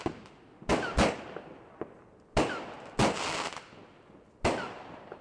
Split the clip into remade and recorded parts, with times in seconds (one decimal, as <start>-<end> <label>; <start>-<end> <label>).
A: 0.0-5.2 recorded